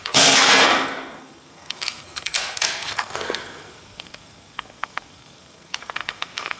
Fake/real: fake